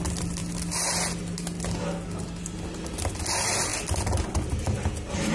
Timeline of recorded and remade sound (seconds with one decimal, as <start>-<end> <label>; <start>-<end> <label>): 0.0-5.3 recorded

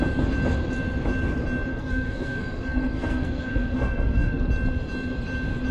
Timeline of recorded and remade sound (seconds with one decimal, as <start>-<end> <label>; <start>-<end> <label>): 0.0-1.7 recorded; 1.7-4.4 remade; 4.4-5.7 recorded

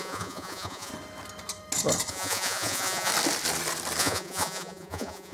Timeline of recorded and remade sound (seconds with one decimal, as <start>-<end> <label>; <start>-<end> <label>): 0.0-0.9 remade; 0.9-2.1 recorded; 2.1-3.1 remade; 3.1-4.0 recorded; 4.0-5.3 remade

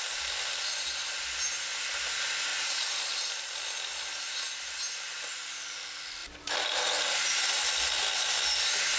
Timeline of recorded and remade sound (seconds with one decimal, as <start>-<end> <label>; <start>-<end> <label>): 0.0-2.5 recorded; 2.5-3.6 remade; 3.6-6.2 recorded; 6.2-8.6 remade; 8.6-9.0 recorded

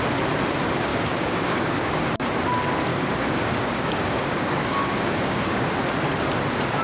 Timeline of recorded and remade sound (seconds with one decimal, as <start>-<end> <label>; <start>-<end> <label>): 0.0-0.9 recorded; 0.9-2.0 remade; 2.0-2.9 recorded; 2.9-5.7 remade; 5.7-6.8 recorded